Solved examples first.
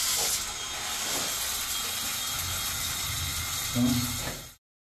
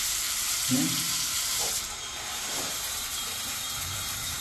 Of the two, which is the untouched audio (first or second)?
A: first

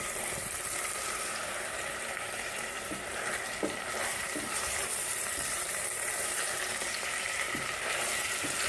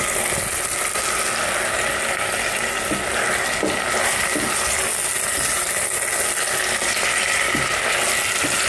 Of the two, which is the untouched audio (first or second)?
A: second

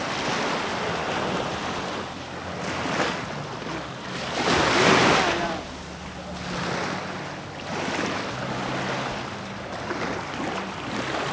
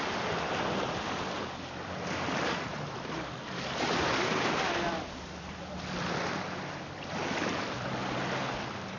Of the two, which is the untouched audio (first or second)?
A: first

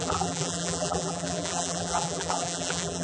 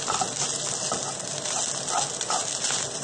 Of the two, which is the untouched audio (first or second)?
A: second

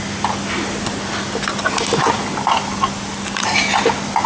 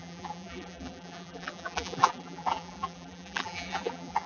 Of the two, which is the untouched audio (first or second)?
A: first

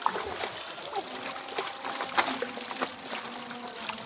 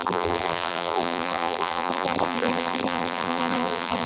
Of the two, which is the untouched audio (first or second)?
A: first